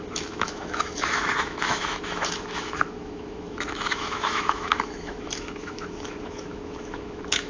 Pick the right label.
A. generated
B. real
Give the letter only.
A